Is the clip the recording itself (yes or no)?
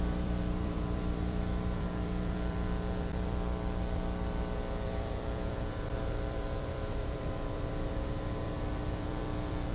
no